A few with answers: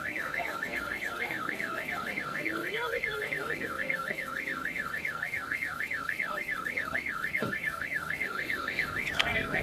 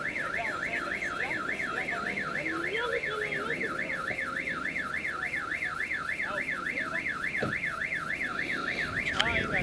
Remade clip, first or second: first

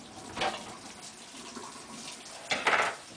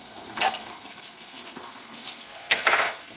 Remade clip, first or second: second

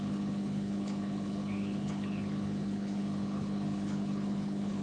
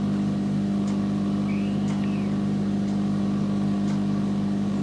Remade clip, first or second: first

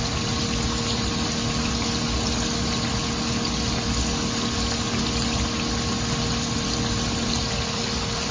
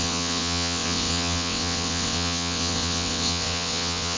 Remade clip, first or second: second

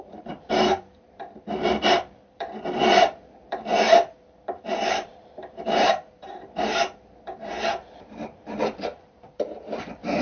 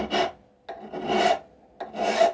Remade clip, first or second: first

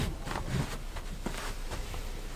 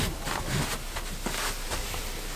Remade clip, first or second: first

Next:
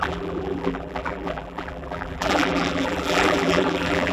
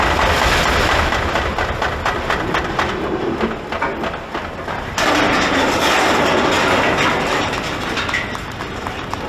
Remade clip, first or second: first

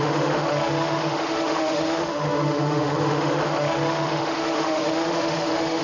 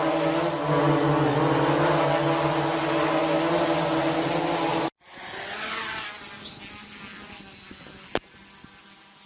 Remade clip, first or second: first